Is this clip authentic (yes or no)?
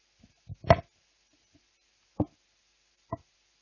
yes